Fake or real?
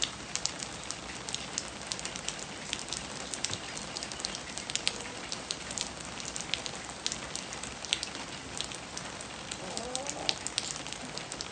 real